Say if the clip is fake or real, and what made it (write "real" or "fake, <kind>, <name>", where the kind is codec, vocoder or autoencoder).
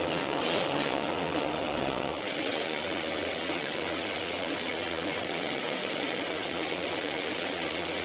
fake, vocoder, WaveNeXt